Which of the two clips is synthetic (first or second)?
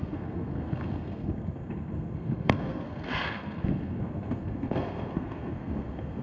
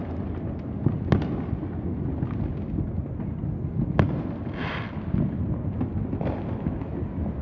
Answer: first